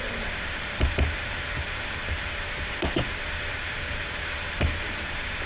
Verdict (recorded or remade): remade